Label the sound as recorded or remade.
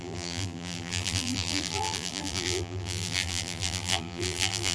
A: remade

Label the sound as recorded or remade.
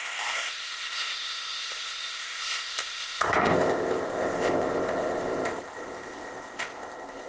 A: remade